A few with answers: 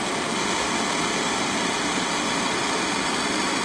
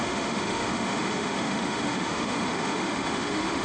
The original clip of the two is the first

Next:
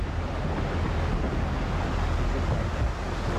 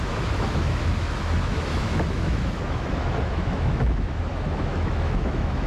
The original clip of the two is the first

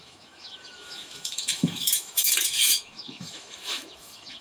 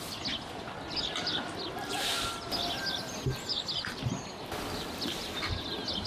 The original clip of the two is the second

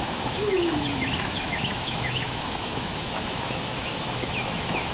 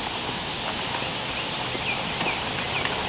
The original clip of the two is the second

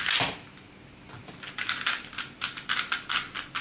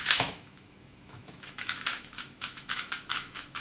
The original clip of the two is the first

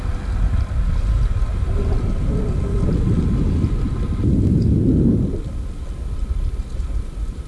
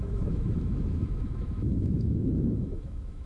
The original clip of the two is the first